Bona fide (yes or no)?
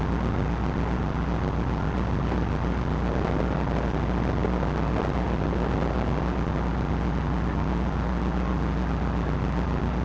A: yes